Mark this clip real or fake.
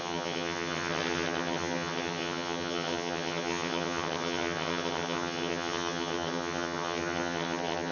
fake